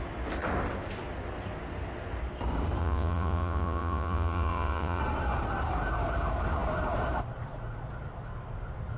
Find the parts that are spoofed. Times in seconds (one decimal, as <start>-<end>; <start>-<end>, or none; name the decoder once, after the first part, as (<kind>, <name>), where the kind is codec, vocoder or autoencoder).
2.8-5.0 (vocoder, Vocos)